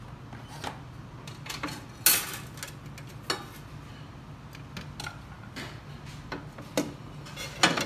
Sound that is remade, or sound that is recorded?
recorded